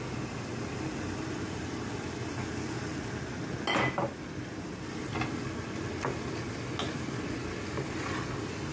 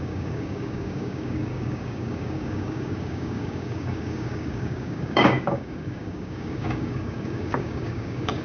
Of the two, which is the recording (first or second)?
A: first